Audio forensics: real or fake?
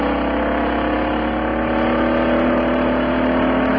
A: real